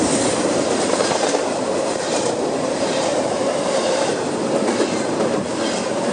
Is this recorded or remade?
remade